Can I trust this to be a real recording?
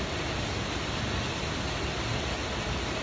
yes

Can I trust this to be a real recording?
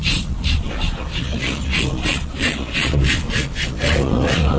no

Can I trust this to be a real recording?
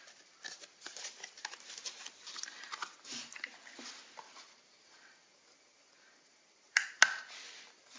yes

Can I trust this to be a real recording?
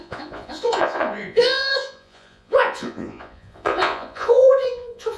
no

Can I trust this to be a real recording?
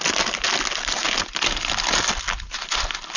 yes